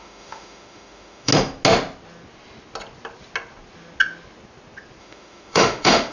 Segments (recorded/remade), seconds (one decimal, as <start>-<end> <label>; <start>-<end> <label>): 0.0-1.3 remade; 1.3-5.0 recorded; 5.0-6.1 remade